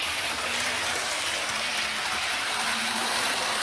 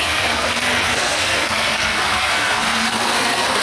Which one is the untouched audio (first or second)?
first